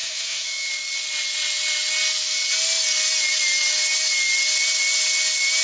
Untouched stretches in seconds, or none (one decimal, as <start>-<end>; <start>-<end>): 0.7-5.6